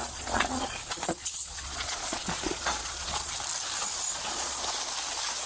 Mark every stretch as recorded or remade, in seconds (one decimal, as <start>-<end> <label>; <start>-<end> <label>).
0.0-3.3 remade; 3.3-4.1 recorded; 4.1-4.6 remade; 4.6-5.5 recorded